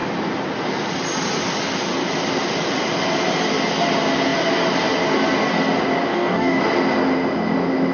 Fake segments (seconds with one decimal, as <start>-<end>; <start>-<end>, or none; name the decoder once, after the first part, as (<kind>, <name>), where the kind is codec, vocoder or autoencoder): 6.1-6.6 (codec, DAC)